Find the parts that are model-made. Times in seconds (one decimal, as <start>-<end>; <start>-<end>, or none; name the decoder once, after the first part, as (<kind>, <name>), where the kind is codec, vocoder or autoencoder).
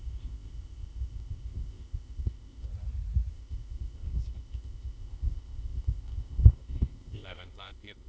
0.0-2.7 (codec, ZipCodec); 3.3-8.1